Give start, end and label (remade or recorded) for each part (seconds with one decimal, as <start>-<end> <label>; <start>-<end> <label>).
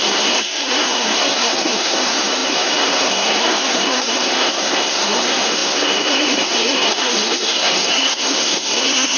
0.0-9.2 remade